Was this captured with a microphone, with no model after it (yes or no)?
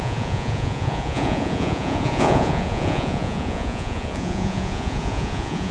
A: no